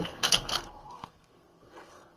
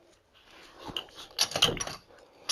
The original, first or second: second